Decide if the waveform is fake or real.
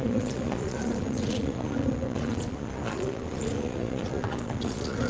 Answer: fake